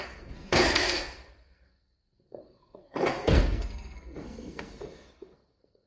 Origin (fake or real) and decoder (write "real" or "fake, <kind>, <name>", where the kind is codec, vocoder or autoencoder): fake, codec, SNAC